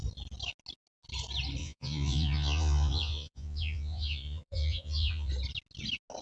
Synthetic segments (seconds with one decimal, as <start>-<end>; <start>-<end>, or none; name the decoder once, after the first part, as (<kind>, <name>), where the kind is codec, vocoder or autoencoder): 1.6-5.3 (vocoder, Vocos)